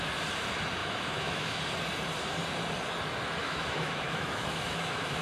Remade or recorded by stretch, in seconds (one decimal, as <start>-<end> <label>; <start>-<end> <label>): 0.0-0.8 recorded; 0.8-1.6 remade; 1.6-3.4 recorded; 3.4-5.2 remade